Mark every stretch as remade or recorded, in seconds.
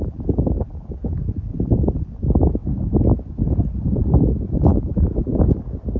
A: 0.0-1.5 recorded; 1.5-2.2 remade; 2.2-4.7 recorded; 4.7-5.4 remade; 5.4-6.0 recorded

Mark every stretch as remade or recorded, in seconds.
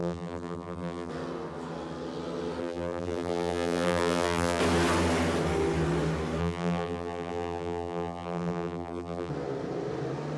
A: 0.0-1.1 remade; 1.1-2.6 recorded; 2.6-4.6 remade; 4.6-6.4 recorded; 6.4-9.3 remade; 9.3-10.4 recorded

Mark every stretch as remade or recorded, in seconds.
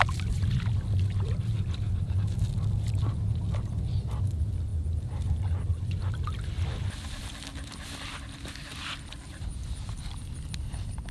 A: 0.0-7.5 recorded; 7.5-11.1 remade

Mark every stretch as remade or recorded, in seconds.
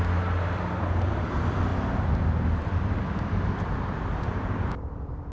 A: 0.0-1.7 remade; 1.7-2.6 recorded; 2.6-5.3 remade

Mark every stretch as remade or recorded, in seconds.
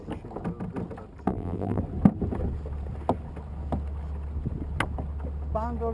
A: 0.0-1.3 recorded; 1.3-1.8 remade; 1.8-5.9 recorded